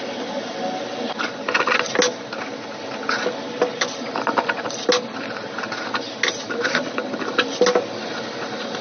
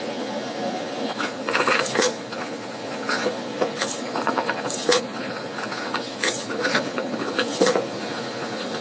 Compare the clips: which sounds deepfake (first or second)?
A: second